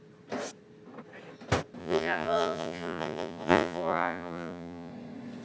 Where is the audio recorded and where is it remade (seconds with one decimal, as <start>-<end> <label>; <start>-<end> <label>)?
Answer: 0.0-1.8 recorded; 1.8-4.9 remade; 4.9-5.4 recorded